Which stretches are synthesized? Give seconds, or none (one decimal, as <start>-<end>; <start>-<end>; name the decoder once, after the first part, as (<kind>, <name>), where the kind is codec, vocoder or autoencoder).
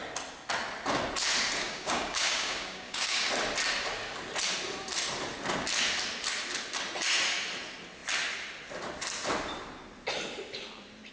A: 1.6-3.3 (codec, DAC)